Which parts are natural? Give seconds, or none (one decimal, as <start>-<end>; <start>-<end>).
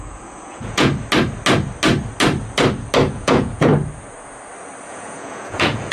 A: 0.9-3.1; 3.7-4.9